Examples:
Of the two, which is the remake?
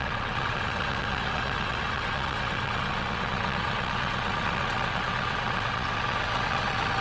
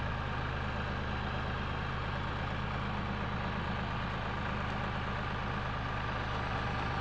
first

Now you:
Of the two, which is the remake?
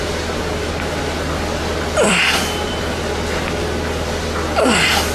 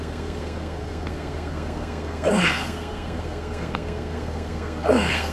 second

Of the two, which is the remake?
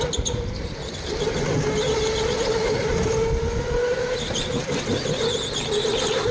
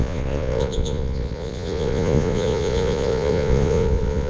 second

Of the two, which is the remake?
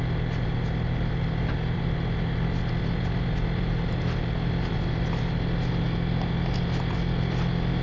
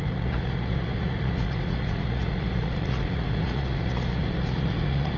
second